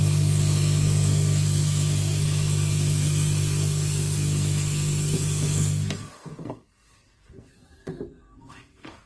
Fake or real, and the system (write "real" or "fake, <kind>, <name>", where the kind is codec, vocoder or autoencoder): fake, codec, SNAC